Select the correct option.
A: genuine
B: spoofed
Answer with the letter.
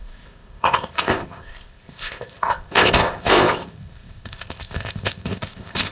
B